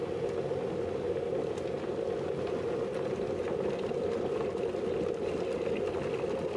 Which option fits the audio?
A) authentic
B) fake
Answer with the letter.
A